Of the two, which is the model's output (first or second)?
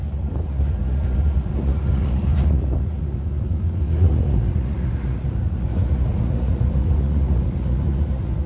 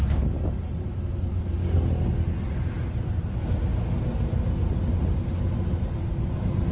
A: first